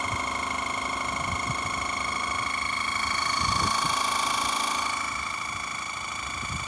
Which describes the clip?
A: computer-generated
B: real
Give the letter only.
B